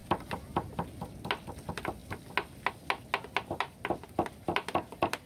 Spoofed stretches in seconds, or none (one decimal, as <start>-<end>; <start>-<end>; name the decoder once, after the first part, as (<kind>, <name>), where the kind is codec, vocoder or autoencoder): none